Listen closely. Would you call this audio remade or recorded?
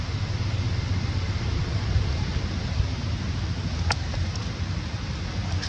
recorded